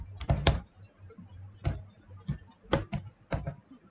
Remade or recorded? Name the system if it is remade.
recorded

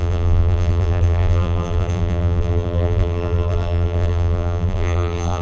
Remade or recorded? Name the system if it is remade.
remade, vocoder, BigVGAN v2